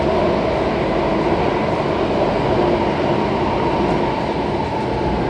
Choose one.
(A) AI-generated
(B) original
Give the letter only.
B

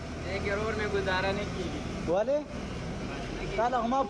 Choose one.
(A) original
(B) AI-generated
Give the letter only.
A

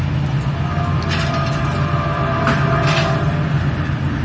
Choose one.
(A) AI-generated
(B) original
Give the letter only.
B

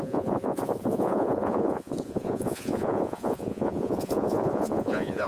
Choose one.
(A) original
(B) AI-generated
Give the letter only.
B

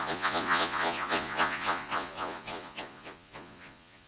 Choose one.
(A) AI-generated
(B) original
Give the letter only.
A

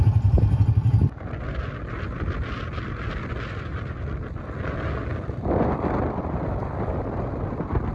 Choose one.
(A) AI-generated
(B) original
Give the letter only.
B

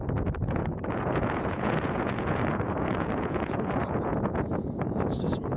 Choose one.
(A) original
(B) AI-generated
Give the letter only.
B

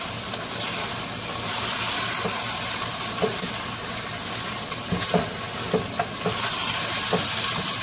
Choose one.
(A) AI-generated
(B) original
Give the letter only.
B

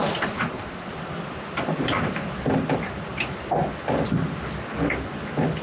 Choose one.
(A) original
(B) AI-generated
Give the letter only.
A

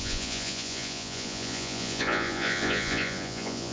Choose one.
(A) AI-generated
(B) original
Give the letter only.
A